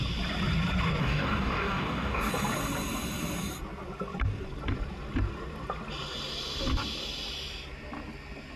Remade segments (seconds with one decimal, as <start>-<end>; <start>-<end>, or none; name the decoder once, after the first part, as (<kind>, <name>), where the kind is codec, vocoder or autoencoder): 1.0-2.3 (codec, DAC)